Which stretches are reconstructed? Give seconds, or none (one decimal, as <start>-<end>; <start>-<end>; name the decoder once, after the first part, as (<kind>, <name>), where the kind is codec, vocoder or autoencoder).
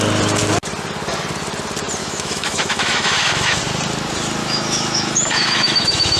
2.0-3.6 (autoencoder, DAC-VAE); 4.4-6.2